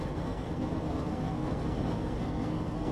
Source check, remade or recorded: remade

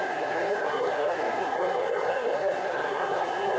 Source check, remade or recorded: remade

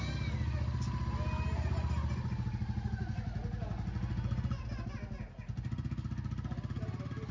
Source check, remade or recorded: recorded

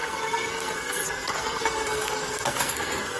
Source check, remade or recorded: remade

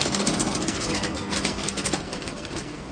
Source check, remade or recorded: remade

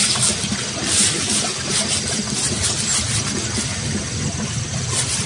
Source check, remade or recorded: recorded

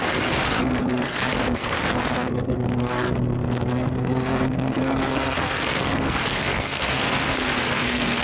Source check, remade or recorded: remade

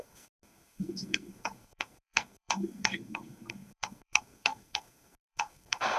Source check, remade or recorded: remade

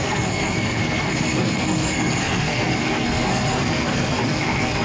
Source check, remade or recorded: remade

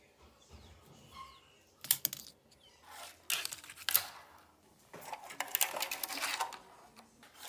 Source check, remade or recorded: recorded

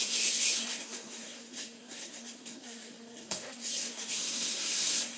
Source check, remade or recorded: remade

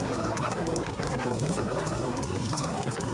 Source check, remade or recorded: remade